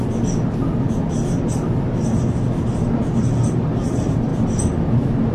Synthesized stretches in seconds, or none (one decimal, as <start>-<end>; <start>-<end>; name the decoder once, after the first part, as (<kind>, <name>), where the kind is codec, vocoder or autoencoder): 3.2-4.3 (vocoder, BigVGAN v2); 4.8-5.3